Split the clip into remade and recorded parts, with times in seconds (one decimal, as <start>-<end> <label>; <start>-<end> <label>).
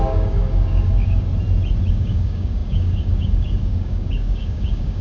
0.0-1.3 remade; 1.3-1.9 recorded; 1.9-5.0 remade